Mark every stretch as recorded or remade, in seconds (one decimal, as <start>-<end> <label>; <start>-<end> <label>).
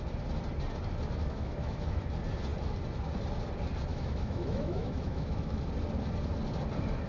0.0-1.2 recorded; 1.2-2.1 remade; 2.1-3.9 recorded; 3.9-5.6 remade; 5.6-7.1 recorded